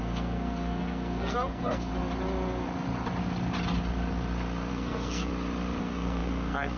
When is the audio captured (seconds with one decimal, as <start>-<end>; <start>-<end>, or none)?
1.9-4.7; 5.3-5.8

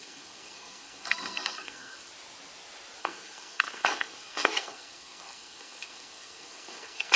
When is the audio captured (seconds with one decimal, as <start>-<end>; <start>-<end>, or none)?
2.1-3.0